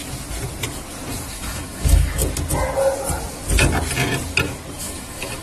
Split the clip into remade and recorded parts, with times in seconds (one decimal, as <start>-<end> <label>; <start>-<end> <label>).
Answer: 0.0-1.3 recorded; 1.3-2.2 remade; 2.2-4.8 recorded; 4.8-5.4 remade